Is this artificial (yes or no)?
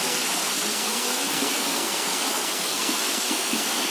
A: yes